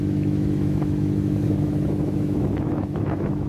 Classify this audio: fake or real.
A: fake